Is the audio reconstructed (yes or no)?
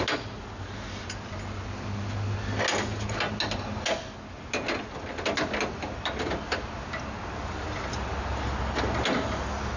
no